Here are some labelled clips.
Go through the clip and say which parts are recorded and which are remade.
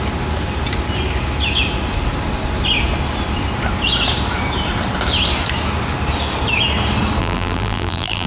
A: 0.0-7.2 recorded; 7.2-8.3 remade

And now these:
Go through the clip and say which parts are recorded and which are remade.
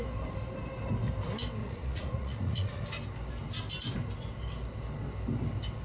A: 0.0-1.6 recorded; 1.6-2.8 remade; 2.8-5.8 recorded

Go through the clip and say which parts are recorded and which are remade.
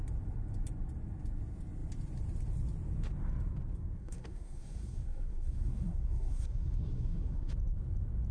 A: 0.0-4.0 recorded; 4.0-7.5 remade; 7.5-8.3 recorded